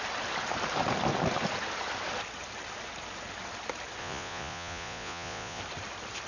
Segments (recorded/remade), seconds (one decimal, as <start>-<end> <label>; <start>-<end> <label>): 0.0-4.0 recorded; 4.0-5.6 remade; 5.6-6.3 recorded